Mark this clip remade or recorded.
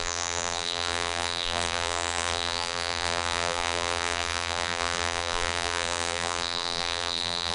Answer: remade